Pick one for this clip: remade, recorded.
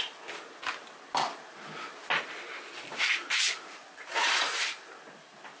recorded